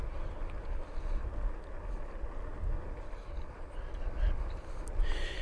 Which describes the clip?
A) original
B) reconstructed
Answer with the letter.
A